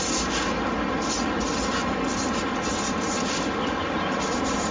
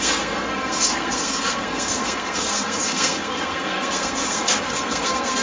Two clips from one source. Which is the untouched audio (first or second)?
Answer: first